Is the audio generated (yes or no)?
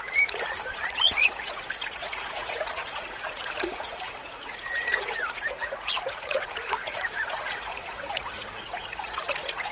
yes